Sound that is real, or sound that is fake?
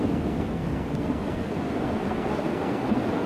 fake